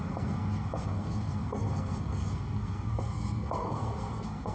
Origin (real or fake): fake